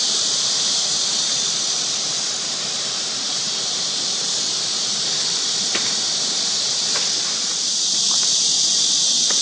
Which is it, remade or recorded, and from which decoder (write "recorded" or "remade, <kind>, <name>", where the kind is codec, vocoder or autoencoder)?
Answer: remade, vocoder, BigVGAN v2